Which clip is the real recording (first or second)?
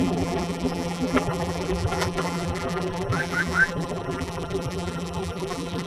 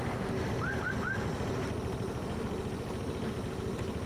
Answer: second